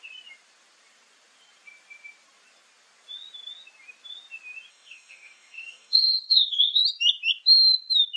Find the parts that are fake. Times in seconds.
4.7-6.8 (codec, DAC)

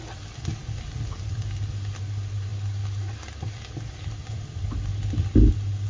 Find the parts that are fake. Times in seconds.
none